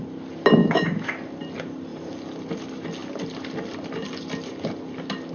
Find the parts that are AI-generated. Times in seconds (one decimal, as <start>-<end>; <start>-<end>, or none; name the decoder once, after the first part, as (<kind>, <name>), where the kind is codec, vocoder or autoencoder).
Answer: 0.6-1.1 (autoencoder, DAC-VAE)